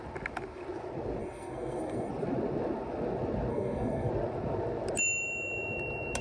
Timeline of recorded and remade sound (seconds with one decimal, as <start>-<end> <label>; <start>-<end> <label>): 0.0-1.2 recorded; 1.2-2.1 remade; 2.1-3.5 recorded; 3.5-4.1 remade; 4.1-6.2 recorded